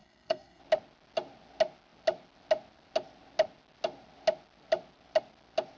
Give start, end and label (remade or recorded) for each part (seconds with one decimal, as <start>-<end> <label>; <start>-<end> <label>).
0.0-0.6 remade; 0.6-5.8 recorded